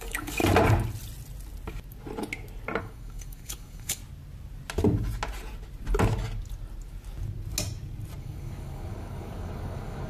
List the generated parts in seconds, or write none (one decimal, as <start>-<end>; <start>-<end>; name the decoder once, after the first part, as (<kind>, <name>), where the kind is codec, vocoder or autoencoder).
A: 0.0-0.4 (codec, DAC); 2.8-4.0; 8.2-10.1